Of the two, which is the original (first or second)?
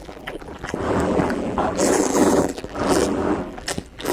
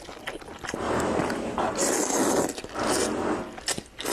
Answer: second